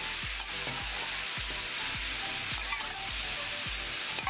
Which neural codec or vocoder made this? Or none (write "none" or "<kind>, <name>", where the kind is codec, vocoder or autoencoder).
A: none